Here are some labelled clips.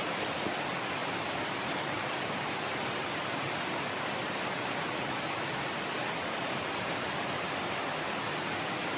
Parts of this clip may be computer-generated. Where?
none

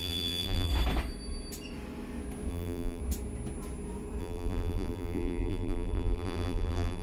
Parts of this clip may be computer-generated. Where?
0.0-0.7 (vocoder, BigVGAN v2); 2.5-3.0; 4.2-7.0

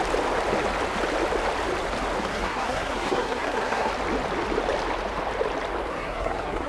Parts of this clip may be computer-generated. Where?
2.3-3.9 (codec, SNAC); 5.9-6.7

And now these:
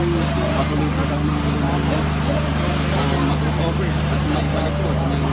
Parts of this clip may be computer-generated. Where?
none

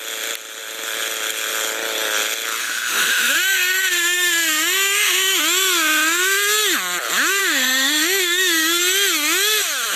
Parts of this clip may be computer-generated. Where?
2.6-5.4 (autoencoder, DAC-VAE); 7.4-8.8

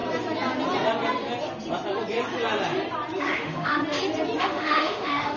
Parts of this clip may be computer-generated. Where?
3.2-3.8 (autoencoder, DAC-VAE); 4.4-5.4